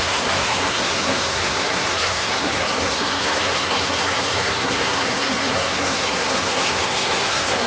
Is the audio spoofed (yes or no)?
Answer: yes